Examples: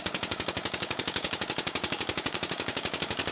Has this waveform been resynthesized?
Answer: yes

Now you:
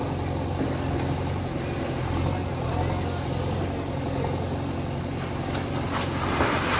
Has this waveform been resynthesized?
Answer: no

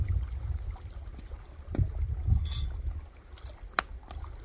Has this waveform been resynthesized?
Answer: no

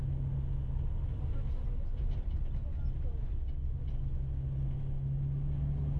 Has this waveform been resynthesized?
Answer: no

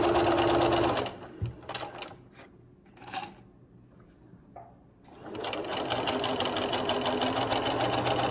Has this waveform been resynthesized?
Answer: no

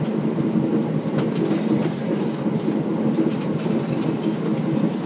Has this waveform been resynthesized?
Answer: no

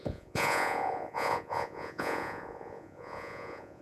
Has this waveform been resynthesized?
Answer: yes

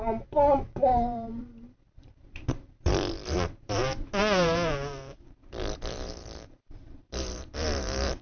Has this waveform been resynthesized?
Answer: yes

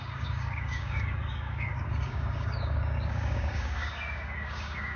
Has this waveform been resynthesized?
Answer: yes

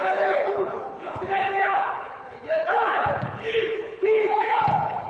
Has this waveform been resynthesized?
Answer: yes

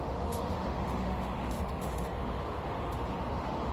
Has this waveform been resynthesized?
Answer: yes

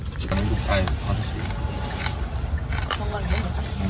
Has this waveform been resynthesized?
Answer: no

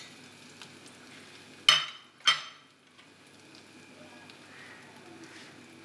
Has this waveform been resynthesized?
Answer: no